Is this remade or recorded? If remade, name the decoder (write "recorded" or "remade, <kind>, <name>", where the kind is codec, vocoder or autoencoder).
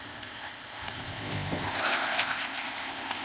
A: remade, codec, ZipCodec